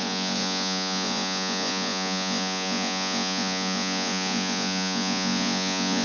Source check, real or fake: fake